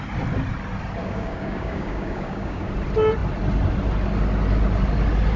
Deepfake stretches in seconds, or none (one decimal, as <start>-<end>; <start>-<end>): 1.0-2.7